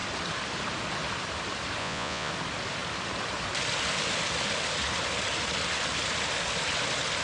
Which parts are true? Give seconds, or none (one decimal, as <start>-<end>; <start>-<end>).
0.0-1.8; 2.3-7.2